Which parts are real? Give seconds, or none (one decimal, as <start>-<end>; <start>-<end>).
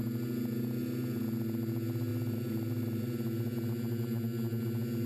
0.0-5.1